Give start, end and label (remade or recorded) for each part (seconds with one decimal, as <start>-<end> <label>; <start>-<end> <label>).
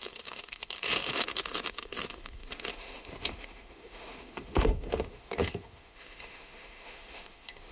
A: 0.0-7.7 remade